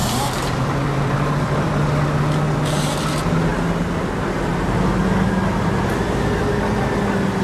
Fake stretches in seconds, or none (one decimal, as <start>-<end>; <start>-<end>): 0.0-1.7; 3.5-4.1